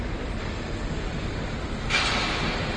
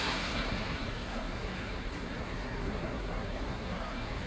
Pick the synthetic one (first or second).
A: second